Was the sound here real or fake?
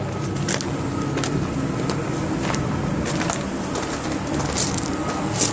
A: real